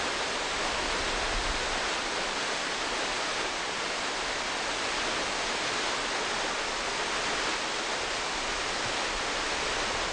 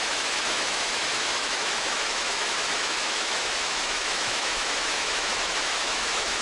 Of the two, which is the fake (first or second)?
second